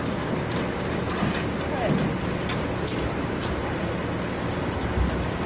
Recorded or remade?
recorded